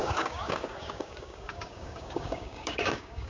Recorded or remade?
remade